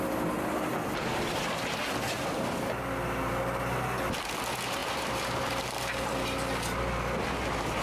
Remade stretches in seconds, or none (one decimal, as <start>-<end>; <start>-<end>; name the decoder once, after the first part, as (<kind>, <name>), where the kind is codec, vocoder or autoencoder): 4.8-5.6 (vocoder, BigVGAN v2)